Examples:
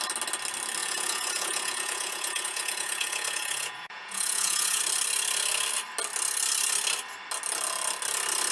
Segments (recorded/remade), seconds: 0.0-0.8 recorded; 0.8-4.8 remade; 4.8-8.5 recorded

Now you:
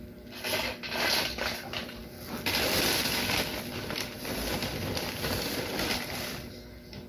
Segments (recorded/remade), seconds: 0.0-7.1 recorded

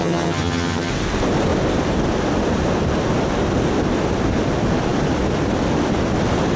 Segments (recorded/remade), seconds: 0.0-0.9 remade; 0.9-6.6 recorded

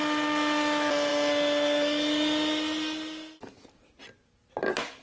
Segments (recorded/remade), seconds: 0.0-5.0 recorded